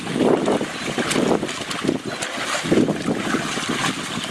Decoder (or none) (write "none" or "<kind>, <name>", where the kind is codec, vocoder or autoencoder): none